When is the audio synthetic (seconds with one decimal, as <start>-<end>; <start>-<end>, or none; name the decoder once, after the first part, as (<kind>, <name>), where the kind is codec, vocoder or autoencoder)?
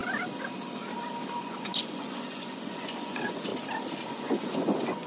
1.4-3.5 (vocoder, Vocos); 4.1-5.1